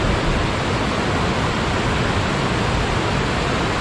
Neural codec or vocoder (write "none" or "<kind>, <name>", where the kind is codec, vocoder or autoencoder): none